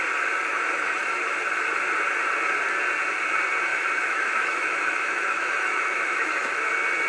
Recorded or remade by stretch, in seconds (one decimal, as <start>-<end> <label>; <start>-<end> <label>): 0.0-0.5 recorded; 0.5-1.2 remade; 1.2-3.7 recorded; 3.7-6.6 remade; 6.6-7.1 recorded